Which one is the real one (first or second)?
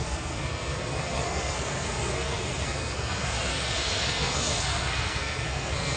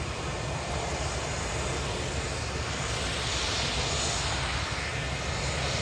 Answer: second